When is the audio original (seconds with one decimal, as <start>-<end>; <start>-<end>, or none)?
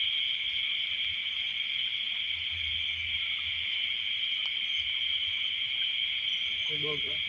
0.0-7.3